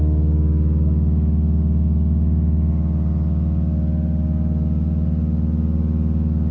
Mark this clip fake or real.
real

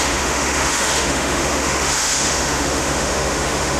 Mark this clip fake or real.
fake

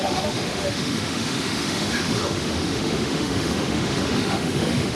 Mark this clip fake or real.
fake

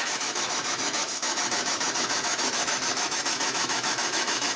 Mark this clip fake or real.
fake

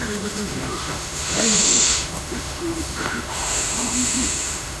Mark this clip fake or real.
fake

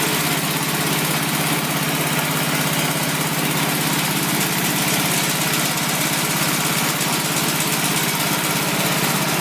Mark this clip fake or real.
real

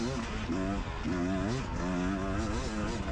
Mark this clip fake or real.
real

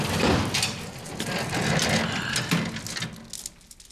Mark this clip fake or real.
real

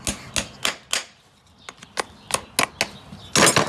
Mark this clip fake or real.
real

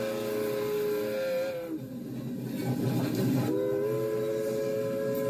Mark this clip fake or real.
real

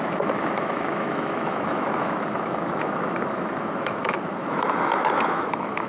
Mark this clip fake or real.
fake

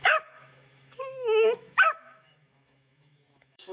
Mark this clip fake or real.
fake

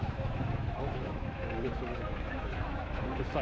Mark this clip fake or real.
fake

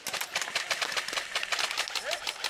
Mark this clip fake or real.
real